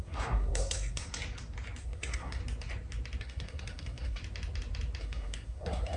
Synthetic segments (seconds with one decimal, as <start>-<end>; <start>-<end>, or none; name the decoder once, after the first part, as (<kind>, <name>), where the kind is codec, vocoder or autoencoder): 0.0-1.2 (codec, SNAC); 1.8-2.4; 3.2-4.2; 5.0-6.0